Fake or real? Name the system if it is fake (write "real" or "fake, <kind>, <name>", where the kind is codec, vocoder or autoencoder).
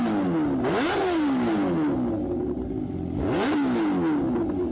real